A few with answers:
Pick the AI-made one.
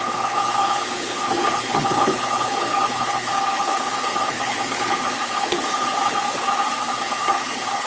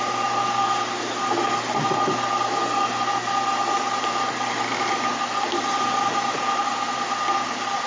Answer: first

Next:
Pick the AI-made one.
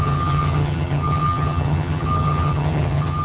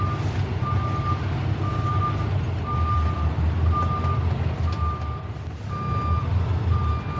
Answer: first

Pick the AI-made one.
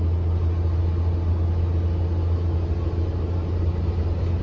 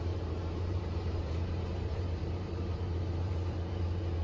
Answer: second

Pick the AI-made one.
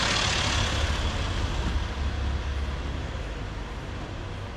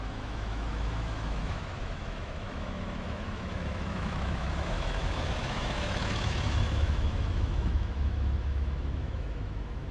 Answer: second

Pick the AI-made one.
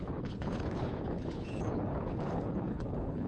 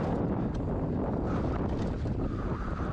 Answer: first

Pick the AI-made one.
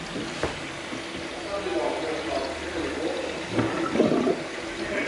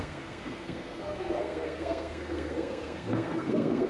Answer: second